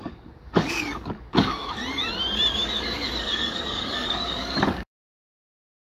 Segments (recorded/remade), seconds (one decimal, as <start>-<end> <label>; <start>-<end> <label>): 0.0-1.8 remade; 1.8-2.5 recorded; 2.5-5.9 remade